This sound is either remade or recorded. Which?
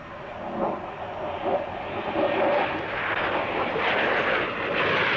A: recorded